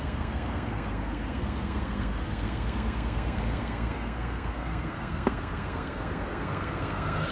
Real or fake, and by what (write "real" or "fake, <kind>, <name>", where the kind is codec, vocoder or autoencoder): fake, codec, SNAC